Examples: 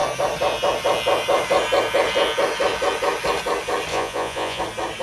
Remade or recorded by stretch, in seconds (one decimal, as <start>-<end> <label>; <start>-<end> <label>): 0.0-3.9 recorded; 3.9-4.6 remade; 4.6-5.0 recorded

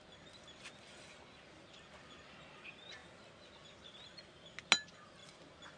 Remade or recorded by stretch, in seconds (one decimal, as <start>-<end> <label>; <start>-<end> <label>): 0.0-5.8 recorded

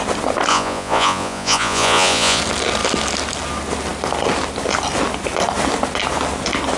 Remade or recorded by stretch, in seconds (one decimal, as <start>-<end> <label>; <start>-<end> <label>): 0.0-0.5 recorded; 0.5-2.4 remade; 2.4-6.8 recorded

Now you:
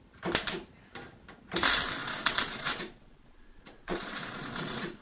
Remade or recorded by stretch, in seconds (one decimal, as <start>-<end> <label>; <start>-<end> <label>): 0.0-2.0 recorded; 2.0-5.0 remade

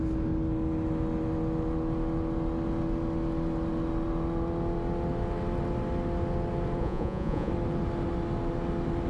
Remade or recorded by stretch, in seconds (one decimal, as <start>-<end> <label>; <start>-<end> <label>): 0.0-6.8 recorded; 6.8-7.5 remade; 7.5-9.1 recorded

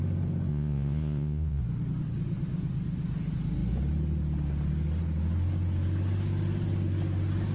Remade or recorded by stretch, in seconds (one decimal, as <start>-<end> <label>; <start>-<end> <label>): 0.0-0.5 recorded; 0.5-1.6 remade; 1.6-7.5 recorded